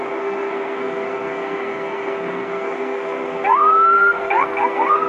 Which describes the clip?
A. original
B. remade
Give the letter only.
B